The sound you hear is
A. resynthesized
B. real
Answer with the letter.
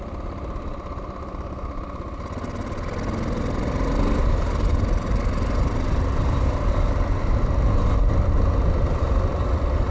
B